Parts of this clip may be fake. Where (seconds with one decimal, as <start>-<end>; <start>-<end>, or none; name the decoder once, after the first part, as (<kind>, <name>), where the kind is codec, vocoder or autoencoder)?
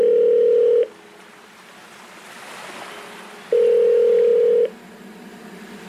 none